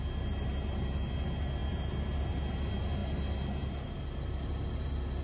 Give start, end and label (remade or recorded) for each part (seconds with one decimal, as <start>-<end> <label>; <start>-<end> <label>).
0.0-5.2 recorded